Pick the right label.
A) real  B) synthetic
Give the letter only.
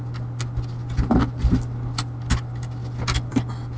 A